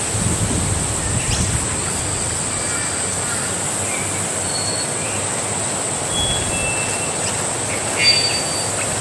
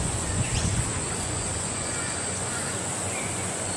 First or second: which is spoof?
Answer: second